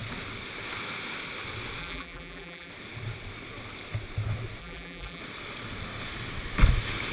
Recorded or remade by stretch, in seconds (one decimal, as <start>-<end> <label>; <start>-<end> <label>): 0.0-1.8 recorded; 1.8-2.7 remade; 2.7-4.6 recorded; 4.6-5.2 remade; 5.2-7.1 recorded